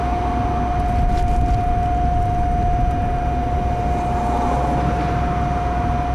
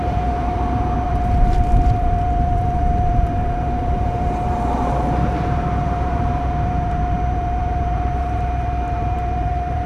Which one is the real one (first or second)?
first